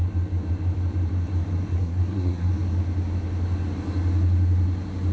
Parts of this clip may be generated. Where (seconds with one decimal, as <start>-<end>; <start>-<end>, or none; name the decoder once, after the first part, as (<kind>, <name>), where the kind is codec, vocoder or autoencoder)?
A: 1.7-2.5 (codec, SNAC)